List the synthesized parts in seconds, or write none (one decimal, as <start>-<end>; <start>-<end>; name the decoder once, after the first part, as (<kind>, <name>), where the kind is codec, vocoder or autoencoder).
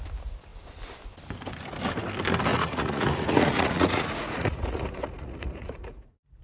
2.5-6.4 (vocoder, Vocos)